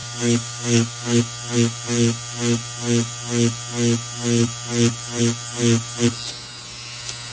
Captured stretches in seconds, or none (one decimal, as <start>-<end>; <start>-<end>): 1.2-7.3